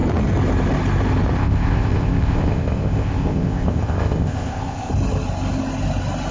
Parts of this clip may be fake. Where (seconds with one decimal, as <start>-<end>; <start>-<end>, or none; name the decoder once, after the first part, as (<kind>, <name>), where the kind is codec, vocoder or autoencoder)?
1.4-4.9 (codec, ZipCodec)